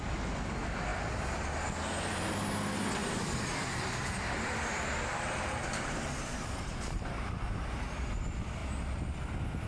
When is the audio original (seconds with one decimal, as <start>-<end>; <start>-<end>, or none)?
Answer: 0.0-3.0; 7.9-9.7